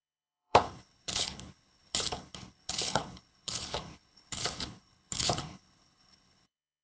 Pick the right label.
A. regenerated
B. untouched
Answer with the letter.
A